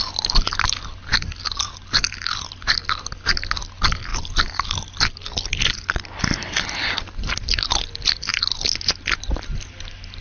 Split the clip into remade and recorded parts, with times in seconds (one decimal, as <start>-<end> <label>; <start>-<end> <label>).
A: 0.0-10.2 recorded